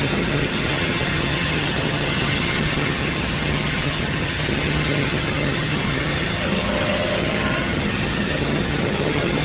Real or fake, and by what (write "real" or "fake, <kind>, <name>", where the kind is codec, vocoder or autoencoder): fake, vocoder, HiFi-GAN